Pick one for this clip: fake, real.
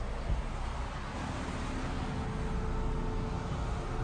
real